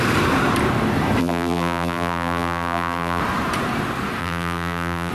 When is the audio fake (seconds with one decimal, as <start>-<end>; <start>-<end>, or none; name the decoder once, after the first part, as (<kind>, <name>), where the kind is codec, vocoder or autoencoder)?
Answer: 1.2-3.2 (vocoder, BigVGAN v2); 4.2-5.1